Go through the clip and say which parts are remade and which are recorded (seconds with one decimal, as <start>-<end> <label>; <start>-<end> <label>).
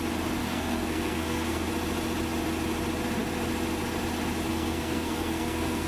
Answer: 0.0-0.4 recorded; 0.4-1.7 remade; 1.7-4.5 recorded; 4.5-5.9 remade